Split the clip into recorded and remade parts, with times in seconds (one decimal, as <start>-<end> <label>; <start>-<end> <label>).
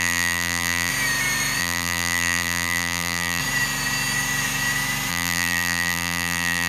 0.0-0.9 remade; 0.9-1.6 recorded; 1.6-3.4 remade; 3.4-5.1 recorded; 5.1-6.7 remade